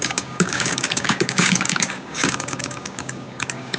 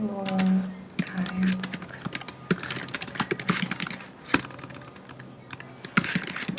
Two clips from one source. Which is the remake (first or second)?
first